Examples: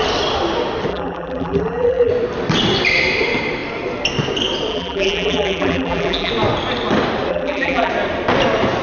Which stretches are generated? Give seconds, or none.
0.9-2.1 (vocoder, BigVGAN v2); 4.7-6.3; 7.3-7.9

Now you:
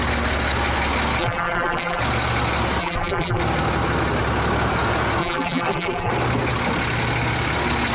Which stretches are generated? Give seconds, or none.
1.2-2.0 (vocoder, BigVGAN v2); 2.8-3.4; 5.2-6.1

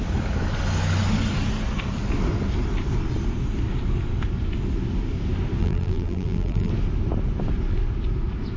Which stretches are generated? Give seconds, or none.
5.6-6.7 (vocoder, BigVGAN v2)

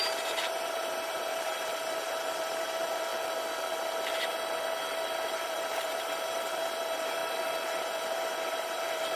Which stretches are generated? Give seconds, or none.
0.0-3.1 (vocoder, BigVGAN v2); 5.3-7.2; 7.7-9.2

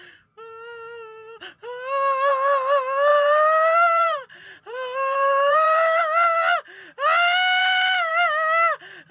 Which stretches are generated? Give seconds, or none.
3.1-6.0 (vocoder, BigVGAN v2)